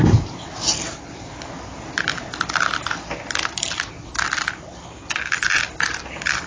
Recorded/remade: recorded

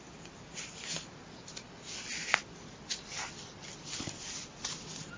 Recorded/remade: recorded